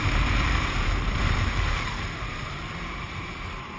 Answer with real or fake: fake